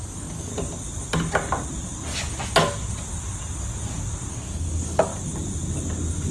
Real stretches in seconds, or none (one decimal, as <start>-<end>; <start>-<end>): 0.5-4.3; 5.1-6.3